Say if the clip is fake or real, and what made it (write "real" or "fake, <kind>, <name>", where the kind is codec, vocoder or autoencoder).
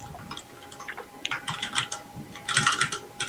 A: real